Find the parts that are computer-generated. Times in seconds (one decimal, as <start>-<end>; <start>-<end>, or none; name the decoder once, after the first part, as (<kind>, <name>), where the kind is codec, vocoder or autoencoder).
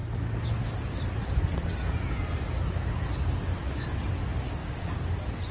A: none